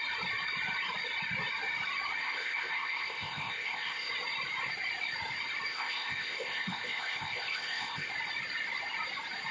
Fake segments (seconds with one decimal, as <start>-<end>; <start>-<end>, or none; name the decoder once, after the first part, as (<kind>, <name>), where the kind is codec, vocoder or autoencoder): 2.2-4.1 (codec, ZipCodec); 5.7-8.1